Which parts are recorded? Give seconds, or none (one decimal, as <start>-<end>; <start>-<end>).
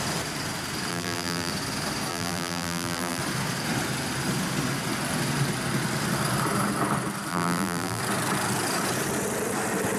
0.0-0.9; 1.5-2.1; 3.2-7.3; 8.0-10.0